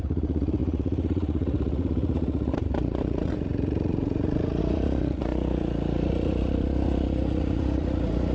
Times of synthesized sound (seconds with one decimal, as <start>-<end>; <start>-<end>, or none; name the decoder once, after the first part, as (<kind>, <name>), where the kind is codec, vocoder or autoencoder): 0.0-8.3 (vocoder, Vocos)